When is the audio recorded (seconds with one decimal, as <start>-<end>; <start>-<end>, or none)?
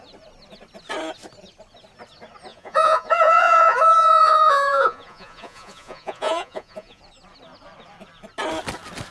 0.0-2.5; 7.0-9.1